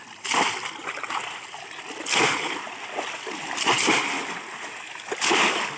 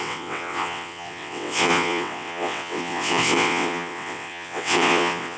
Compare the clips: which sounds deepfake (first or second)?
second